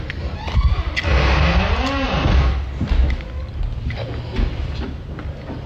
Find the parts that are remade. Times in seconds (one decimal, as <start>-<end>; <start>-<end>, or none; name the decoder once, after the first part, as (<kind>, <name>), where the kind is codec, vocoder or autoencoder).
none